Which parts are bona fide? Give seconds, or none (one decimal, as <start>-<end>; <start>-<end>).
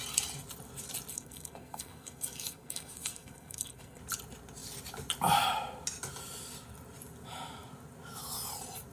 0.0-1.1; 4.0-8.9